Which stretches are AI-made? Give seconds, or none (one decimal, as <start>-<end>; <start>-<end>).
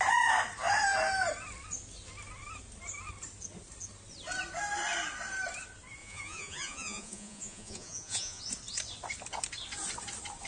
6.0-8.4